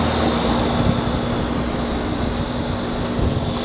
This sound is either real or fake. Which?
real